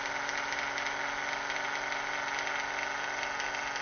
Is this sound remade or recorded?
recorded